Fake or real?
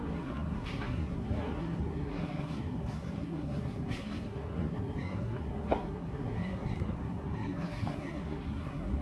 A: fake